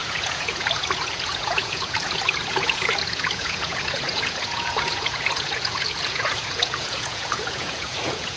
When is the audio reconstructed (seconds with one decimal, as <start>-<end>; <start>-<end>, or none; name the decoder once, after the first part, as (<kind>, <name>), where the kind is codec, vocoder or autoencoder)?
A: 0.0-8.4 (vocoder, Vocos)